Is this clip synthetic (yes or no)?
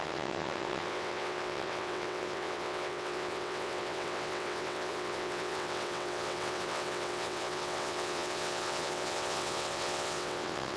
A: yes